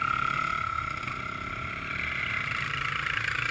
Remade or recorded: remade